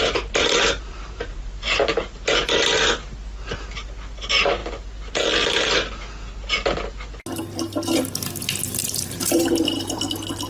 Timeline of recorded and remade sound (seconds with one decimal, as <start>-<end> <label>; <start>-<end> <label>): 0.0-2.1 remade; 2.1-8.8 recorded; 8.8-10.0 remade; 10.0-10.5 recorded